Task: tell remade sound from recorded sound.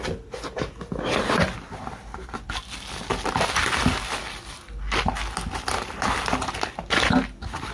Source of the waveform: recorded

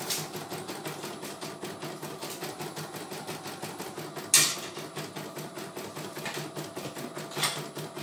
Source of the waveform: recorded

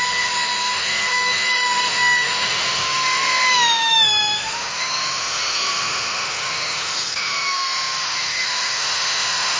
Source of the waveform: remade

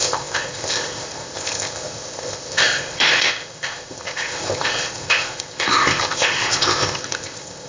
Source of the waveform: remade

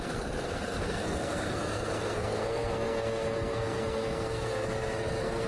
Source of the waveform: remade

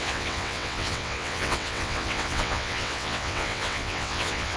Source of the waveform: remade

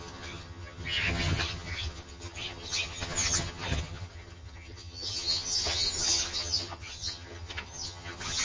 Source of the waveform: remade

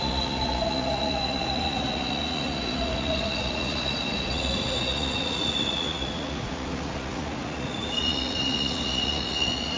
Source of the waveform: remade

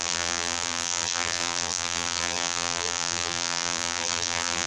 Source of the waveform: remade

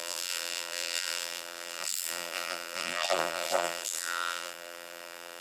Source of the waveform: remade